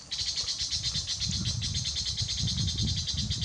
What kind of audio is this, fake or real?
real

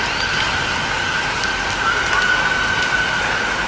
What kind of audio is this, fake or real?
real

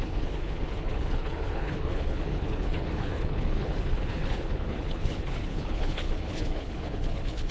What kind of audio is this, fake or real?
fake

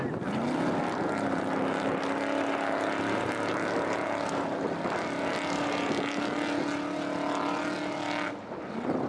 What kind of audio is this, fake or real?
real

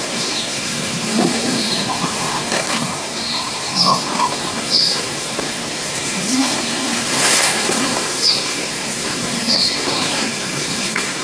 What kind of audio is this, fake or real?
fake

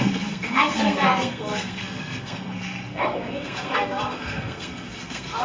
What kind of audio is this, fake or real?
fake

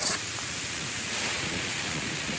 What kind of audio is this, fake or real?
fake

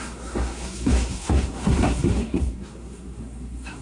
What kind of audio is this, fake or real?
fake